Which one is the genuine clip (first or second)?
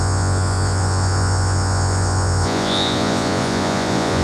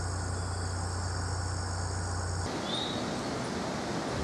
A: second